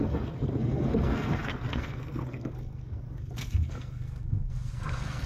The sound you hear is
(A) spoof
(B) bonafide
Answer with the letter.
A